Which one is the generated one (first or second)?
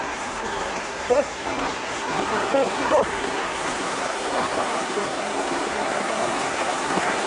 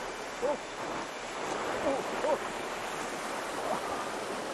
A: first